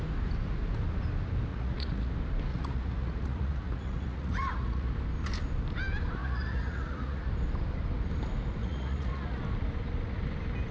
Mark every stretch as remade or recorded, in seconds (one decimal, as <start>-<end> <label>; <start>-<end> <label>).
0.0-1.5 recorded; 1.5-2.1 remade; 2.1-2.5 recorded; 2.5-4.9 remade; 4.9-6.2 recorded; 6.2-7.3 remade; 7.3-8.6 recorded; 8.6-9.4 remade; 9.4-10.7 recorded